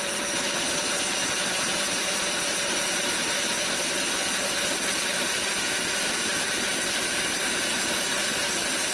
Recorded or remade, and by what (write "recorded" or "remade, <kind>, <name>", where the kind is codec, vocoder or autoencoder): recorded